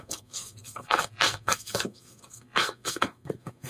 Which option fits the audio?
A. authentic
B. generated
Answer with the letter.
B